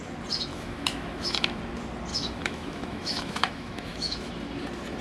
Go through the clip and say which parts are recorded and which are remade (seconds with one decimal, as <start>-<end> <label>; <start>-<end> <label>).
0.0-0.5 recorded; 0.5-1.6 remade; 1.6-2.1 recorded; 2.1-4.3 remade; 4.3-5.0 recorded